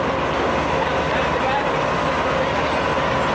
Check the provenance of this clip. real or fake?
real